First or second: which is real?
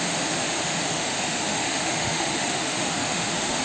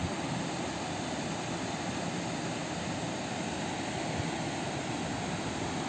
second